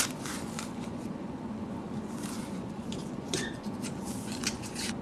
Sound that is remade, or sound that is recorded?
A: remade